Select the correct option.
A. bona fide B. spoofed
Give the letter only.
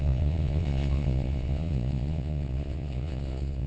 B